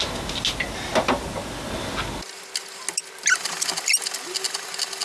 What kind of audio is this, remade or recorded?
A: recorded